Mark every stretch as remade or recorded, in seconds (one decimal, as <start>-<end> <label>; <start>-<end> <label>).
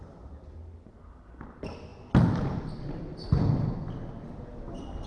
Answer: 0.0-5.1 recorded